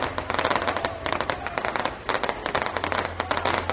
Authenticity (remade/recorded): recorded